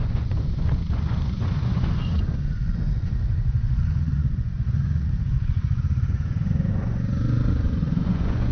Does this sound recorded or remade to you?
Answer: remade